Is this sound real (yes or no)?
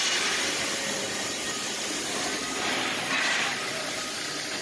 yes